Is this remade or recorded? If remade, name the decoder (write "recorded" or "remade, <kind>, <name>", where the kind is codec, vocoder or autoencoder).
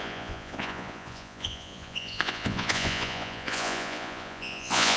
remade, vocoder, Vocos